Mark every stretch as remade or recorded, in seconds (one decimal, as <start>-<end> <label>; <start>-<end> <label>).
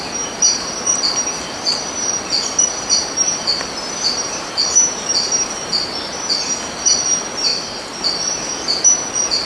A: 0.0-9.5 recorded